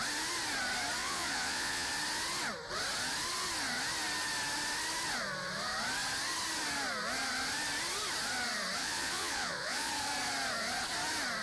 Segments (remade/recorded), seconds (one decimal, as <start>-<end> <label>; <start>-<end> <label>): 0.0-1.0 recorded; 1.0-1.9 remade; 1.9-8.8 recorded; 8.8-9.9 remade; 9.9-11.4 recorded

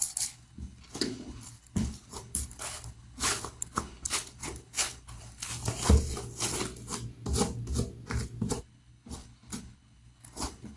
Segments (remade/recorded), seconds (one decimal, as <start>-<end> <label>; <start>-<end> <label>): 0.0-5.5 remade; 5.5-8.6 recorded; 8.6-10.8 remade

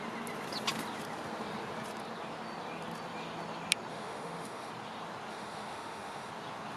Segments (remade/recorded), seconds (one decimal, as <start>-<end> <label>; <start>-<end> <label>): 0.0-3.9 recorded; 3.9-4.7 remade; 4.7-5.3 recorded; 5.3-6.3 remade; 6.3-6.8 recorded